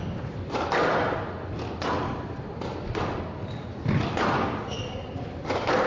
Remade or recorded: recorded